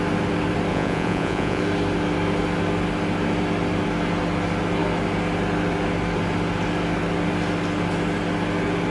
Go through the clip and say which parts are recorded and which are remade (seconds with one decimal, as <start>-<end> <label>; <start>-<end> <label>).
0.0-0.7 recorded; 0.7-1.6 remade; 1.6-8.9 recorded